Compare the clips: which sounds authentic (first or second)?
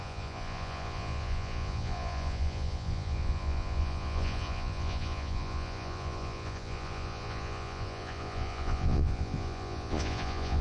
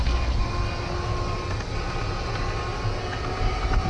second